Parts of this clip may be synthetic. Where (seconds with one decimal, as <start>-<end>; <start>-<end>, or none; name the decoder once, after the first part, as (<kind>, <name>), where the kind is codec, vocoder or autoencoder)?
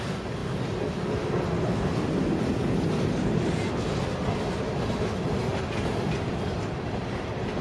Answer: 5.5-6.3 (vocoder, BigVGAN v2)